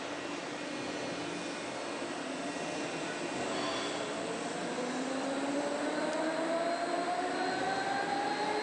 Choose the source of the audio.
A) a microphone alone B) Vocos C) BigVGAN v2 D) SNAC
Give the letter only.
A